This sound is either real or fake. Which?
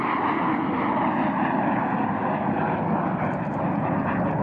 real